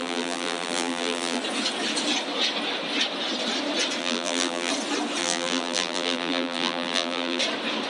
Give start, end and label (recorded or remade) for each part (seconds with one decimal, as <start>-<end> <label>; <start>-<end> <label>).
0.0-1.4 remade; 1.4-4.0 recorded; 4.0-4.7 remade; 4.7-5.2 recorded; 5.2-7.4 remade; 7.4-7.9 recorded